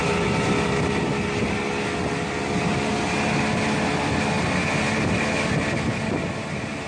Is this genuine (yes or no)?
yes